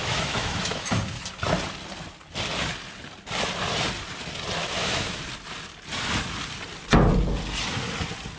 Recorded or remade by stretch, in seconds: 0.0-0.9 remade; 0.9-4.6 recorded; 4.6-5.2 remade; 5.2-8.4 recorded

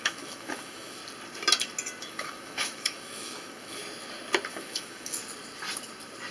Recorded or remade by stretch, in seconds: 0.0-1.0 remade; 1.0-2.0 recorded; 2.0-3.8 remade; 3.8-4.5 recorded; 4.5-5.2 remade; 5.2-6.3 recorded